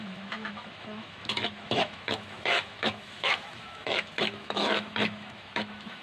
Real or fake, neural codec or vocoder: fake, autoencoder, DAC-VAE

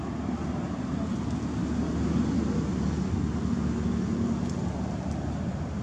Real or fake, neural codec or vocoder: real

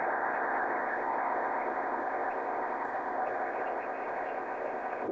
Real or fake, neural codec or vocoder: fake, codec, ZipCodec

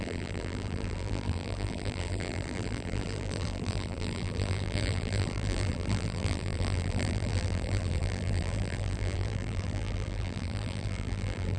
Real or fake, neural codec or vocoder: fake, vocoder, BigVGAN v2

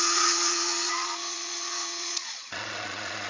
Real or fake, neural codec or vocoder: fake, vocoder, Vocos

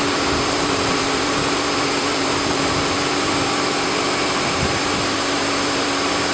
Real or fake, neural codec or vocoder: fake, vocoder, BigVGAN v2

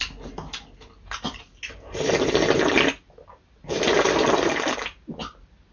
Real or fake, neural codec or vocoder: real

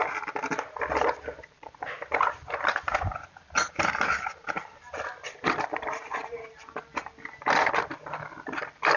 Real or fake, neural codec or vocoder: fake, vocoder, BigVGAN v2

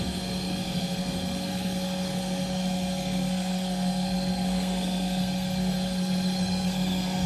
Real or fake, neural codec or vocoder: fake, codec, SNAC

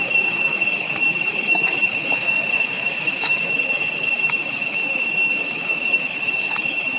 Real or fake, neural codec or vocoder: fake, autoencoder, DAC-VAE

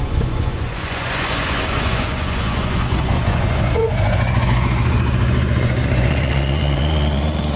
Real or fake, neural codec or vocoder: fake, vocoder, Vocos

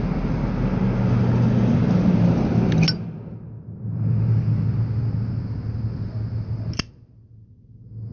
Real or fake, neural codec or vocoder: real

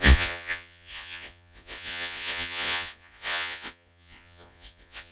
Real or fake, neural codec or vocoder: fake, vocoder, Vocos